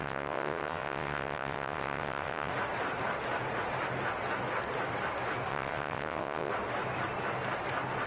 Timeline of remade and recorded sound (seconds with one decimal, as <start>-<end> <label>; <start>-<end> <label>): 0.0-2.5 remade; 2.5-5.5 recorded; 5.5-6.5 remade; 6.5-8.1 recorded